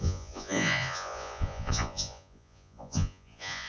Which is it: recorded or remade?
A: remade